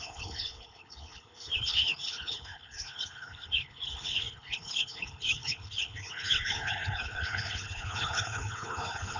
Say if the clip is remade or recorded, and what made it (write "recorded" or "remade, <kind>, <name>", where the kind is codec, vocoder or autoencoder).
remade, codec, HILCodec